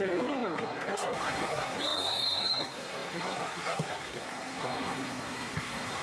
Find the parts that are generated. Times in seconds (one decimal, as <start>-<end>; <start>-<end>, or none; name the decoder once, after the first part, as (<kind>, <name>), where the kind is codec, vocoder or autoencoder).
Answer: 0.0-6.0 (codec, SNAC)